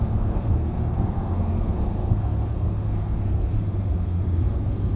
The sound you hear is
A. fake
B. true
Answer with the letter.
A